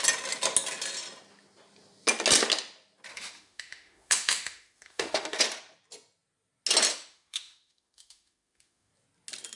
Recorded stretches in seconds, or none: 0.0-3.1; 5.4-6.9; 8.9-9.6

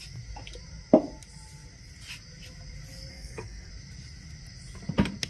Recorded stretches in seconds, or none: 0.0-3.1; 3.7-5.3

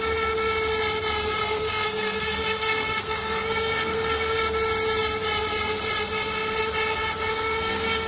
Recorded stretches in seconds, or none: 0.0-1.4; 4.4-7.3